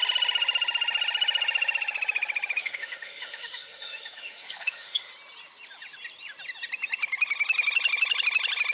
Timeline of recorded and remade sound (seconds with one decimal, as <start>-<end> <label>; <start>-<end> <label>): 0.0-2.6 recorded; 2.6-5.1 remade; 5.1-8.7 recorded